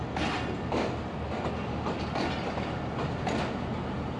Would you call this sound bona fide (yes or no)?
yes